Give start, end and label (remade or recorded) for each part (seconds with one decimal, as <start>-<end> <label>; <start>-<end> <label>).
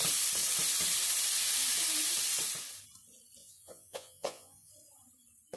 0.0-3.4 recorded; 3.4-4.7 remade; 4.7-5.6 recorded